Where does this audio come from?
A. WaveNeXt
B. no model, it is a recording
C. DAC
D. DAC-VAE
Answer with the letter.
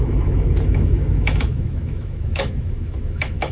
D